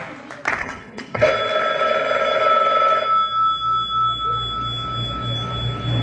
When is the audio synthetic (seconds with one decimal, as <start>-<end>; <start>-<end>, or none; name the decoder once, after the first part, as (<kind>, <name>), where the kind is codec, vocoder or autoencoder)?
0.6-1.3 (codec, HILCodec)